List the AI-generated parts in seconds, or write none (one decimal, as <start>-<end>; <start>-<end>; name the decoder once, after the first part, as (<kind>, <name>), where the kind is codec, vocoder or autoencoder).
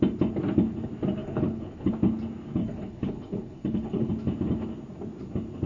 1.2-1.9 (codec, HILCodec); 2.6-4.1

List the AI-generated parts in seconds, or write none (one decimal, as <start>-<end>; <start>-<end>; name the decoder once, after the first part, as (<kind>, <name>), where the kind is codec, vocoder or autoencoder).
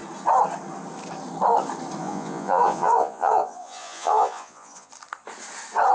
2.0-4.9 (vocoder, Vocos)